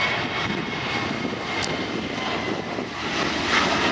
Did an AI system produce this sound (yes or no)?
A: no